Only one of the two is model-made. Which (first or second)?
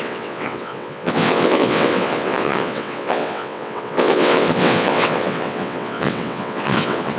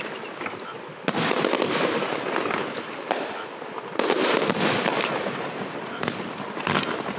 first